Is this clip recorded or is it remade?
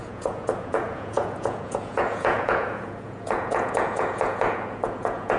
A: remade